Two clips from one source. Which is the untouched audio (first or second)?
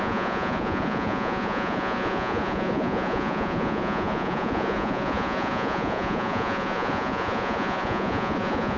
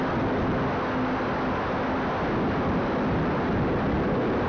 second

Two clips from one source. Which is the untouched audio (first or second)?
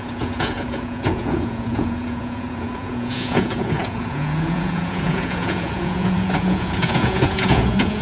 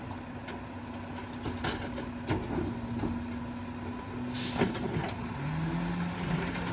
second